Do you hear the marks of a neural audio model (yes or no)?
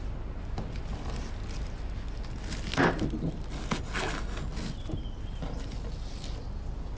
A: no